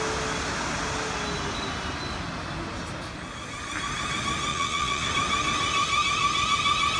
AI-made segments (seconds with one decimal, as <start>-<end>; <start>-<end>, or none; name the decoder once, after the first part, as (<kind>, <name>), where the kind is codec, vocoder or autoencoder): 4.5-5.1 (vocoder, Vocos)